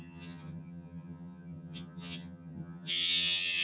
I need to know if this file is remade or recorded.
remade